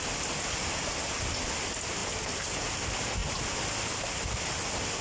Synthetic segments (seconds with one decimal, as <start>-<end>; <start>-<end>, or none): none